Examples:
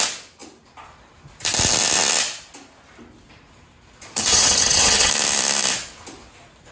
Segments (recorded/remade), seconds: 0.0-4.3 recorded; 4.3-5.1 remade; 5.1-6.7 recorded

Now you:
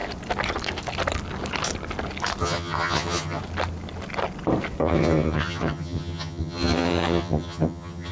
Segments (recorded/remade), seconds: 0.0-2.4 recorded; 2.4-3.4 remade; 3.4-4.8 recorded; 4.8-8.1 remade

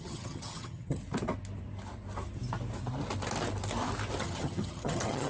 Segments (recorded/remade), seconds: 0.0-1.0 remade; 1.0-4.2 recorded; 4.2-5.3 remade

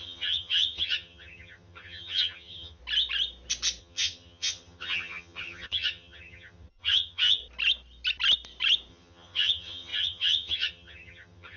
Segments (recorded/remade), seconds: 0.0-2.8 remade; 2.8-3.8 recorded; 3.8-7.4 remade; 7.4-8.9 recorded; 8.9-11.6 remade

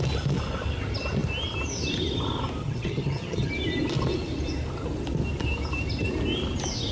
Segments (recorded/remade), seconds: 0.0-2.6 recorded; 2.6-3.5 remade; 3.5-6.9 recorded

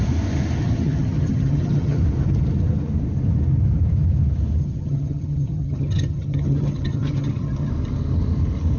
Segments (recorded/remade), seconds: 0.0-0.6 recorded; 0.6-2.0 remade; 2.0-4.6 recorded; 4.6-7.7 remade; 7.7-8.8 recorded

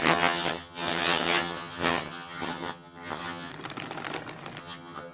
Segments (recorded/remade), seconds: 0.0-3.5 remade; 3.5-4.6 recorded; 4.6-5.1 remade